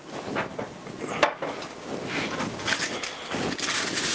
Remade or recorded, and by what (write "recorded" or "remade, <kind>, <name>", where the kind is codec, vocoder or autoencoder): recorded